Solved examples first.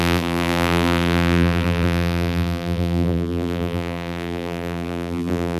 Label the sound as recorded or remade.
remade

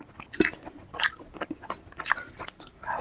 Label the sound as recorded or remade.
recorded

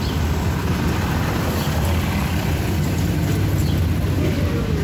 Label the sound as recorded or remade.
recorded